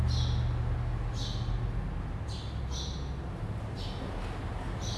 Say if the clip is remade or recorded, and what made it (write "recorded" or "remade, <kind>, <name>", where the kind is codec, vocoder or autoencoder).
recorded